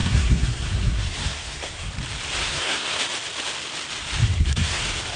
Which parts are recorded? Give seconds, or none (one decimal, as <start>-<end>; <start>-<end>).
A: 1.9-2.4; 3.0-4.2; 4.8-5.2